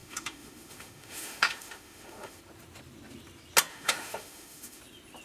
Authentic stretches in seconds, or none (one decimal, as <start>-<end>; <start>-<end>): 2.4-3.7; 4.8-5.2